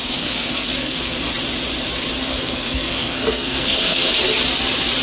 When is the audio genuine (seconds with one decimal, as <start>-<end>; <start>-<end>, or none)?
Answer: 1.2-2.3; 4.1-5.0

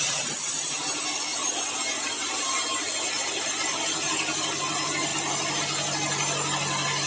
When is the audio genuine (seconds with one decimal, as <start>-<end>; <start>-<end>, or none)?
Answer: 0.0-7.1

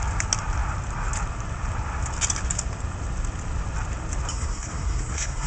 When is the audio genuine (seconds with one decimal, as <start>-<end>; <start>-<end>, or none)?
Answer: 0.0-4.3

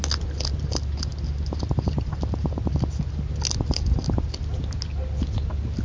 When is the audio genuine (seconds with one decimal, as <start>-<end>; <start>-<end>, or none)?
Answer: 0.0-5.8

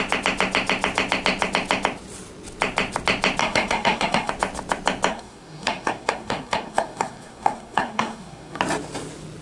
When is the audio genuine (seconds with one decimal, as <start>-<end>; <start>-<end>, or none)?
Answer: 0.0-3.4; 4.3-5.1; 8.6-9.4

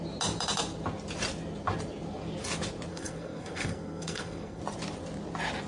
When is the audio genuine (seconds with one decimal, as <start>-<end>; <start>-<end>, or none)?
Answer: 0.0-2.9; 4.6-5.7

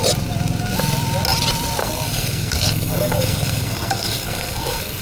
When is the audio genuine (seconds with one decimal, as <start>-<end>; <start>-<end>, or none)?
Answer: 0.0-1.8

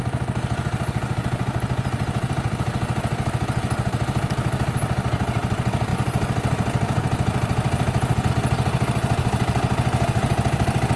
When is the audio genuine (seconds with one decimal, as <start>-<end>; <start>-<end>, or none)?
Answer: 0.0-11.0